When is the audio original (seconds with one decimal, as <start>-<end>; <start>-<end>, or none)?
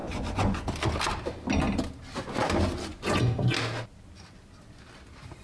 0.7-2.9; 3.4-5.4